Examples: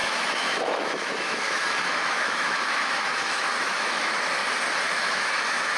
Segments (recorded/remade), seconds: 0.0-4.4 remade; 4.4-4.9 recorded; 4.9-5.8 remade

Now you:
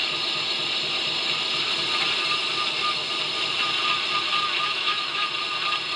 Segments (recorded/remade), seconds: 0.0-4.7 recorded; 4.7-5.3 remade; 5.3-6.0 recorded

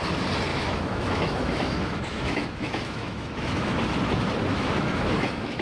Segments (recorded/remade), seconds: 0.0-0.5 recorded; 0.5-3.9 remade; 3.9-4.5 recorded; 4.5-5.6 remade

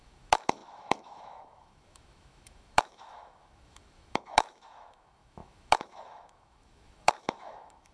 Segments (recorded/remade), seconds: 0.0-7.9 remade

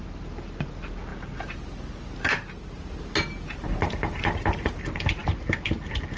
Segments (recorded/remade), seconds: 0.0-6.2 recorded

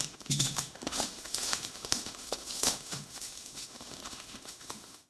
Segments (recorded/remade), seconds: 0.0-5.1 remade

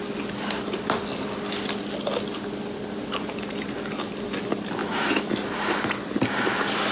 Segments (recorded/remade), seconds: 0.0-4.8 recorded; 4.8-5.3 remade; 5.3-6.9 recorded

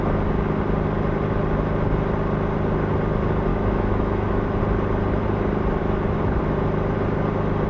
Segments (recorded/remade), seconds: 0.0-3.5 recorded; 3.5-4.6 remade; 4.6-5.8 recorded; 5.8-6.4 remade; 6.4-7.7 recorded